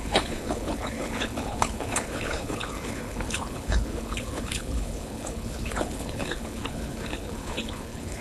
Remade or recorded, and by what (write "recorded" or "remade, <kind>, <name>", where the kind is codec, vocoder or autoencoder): remade, codec, HILCodec